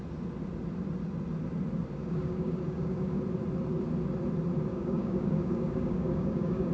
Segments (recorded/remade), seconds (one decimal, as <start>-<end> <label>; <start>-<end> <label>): 0.0-2.0 recorded; 2.0-3.2 remade; 3.2-4.7 recorded; 4.7-6.7 remade